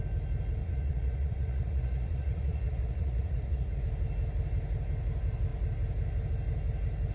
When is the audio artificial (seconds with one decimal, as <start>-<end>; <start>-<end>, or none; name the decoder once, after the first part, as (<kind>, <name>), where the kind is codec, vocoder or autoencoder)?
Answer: 0.6-3.8 (vocoder, Vocos)